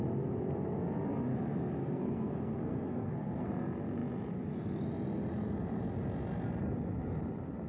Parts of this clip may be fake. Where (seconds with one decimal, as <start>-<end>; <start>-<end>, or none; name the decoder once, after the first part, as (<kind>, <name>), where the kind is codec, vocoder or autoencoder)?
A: 1.8-3.5 (codec, SNAC)